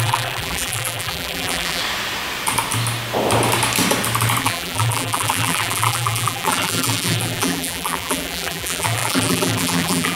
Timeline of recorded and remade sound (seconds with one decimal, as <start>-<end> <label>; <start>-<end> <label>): 0.0-1.8 remade; 1.8-4.4 recorded; 4.4-10.2 remade